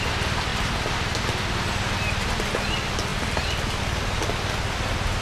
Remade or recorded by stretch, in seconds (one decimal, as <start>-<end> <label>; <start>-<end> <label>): 0.0-0.5 recorded; 0.5-1.2 remade; 1.2-5.2 recorded